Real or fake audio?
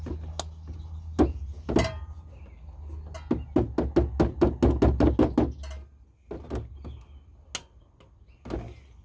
real